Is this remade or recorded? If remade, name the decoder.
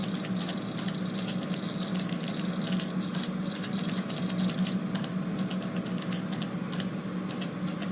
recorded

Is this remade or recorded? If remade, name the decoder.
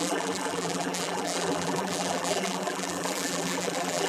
remade, vocoder, BigVGAN v2